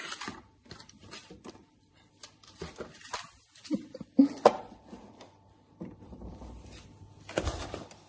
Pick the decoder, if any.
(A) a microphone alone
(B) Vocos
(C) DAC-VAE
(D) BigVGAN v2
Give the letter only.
D